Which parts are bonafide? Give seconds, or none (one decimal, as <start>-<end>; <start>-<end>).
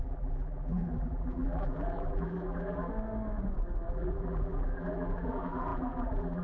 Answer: 2.9-3.9